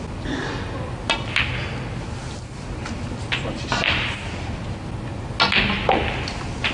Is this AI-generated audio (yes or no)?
no